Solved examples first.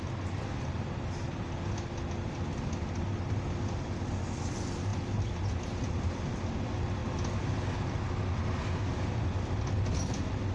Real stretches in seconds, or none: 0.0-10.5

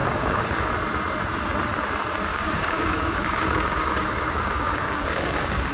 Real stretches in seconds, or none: 0.7-2.3

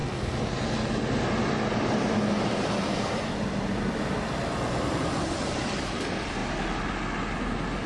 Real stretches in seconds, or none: 0.0-3.1; 6.4-7.9

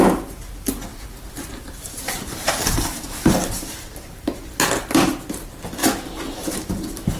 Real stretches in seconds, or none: 0.0-0.9; 4.4-5.8; 6.7-7.2

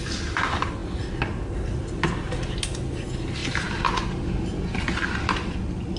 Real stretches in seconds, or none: 0.0-6.0

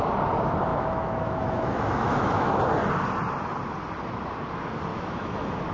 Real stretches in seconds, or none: 0.0-0.7; 2.6-4.9

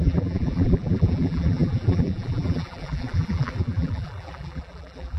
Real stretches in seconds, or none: none

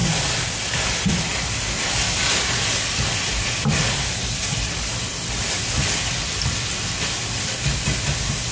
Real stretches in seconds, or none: 0.0-8.5